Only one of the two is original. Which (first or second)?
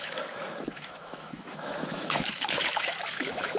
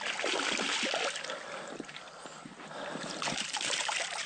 second